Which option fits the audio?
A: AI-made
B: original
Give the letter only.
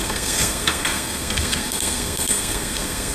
A